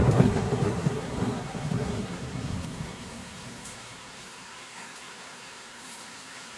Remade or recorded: remade